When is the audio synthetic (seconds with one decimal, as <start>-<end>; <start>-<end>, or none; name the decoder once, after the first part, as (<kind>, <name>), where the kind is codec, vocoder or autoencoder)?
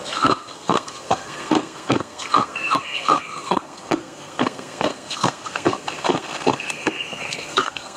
0.0-8.0 (codec, SNAC)